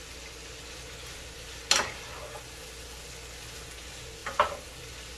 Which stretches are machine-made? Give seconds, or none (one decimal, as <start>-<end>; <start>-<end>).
none